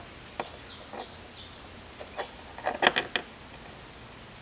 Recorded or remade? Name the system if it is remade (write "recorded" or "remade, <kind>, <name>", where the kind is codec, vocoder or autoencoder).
recorded